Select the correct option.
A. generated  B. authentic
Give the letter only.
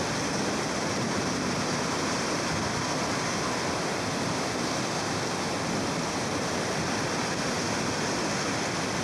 B